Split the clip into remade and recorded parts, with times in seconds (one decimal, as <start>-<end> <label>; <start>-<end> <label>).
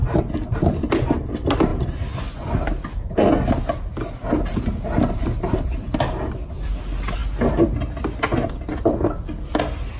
0.0-10.0 recorded